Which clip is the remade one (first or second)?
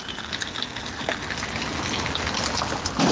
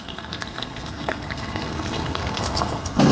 second